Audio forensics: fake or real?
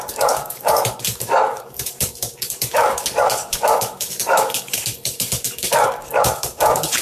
fake